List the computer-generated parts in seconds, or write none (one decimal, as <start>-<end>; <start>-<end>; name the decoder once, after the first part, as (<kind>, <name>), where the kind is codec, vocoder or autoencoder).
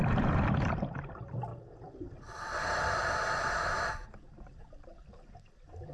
0.0-5.9 (vocoder, BigVGAN v2)